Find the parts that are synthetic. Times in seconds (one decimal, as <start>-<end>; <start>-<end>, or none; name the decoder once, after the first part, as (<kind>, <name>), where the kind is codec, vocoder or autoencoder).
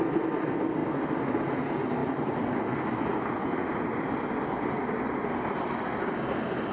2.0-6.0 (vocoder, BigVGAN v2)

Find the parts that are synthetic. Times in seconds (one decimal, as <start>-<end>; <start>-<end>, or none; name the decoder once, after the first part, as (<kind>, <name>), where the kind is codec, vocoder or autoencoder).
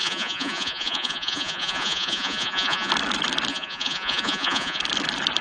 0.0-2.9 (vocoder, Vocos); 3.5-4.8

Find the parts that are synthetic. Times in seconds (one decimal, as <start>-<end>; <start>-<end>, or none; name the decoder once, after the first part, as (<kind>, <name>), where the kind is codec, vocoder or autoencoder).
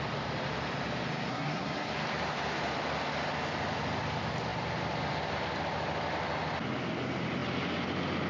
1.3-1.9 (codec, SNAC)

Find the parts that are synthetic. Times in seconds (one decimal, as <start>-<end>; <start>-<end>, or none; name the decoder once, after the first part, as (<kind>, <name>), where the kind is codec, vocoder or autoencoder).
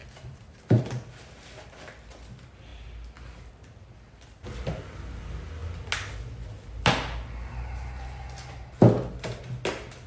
0.0-0.8 (vocoder, BigVGAN v2)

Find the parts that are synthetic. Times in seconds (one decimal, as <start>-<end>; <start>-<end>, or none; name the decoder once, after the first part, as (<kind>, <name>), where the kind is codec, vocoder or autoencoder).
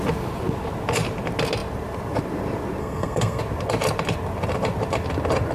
2.8-3.4 (codec, SNAC)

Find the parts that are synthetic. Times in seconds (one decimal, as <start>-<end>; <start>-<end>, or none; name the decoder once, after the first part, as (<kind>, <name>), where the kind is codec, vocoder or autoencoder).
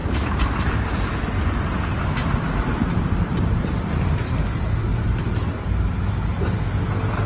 0.0-1.2 (vocoder, BigVGAN v2); 1.9-3.8; 4.9-6.4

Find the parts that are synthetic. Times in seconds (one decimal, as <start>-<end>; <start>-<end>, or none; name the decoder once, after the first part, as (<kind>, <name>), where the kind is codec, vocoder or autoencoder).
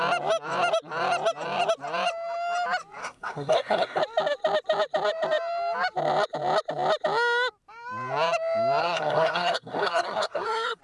3.0-4.0 (codec, SNAC); 8.8-10.8